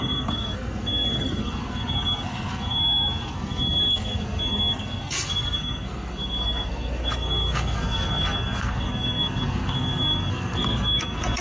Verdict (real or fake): fake